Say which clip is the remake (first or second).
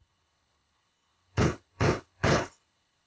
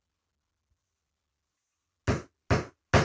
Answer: first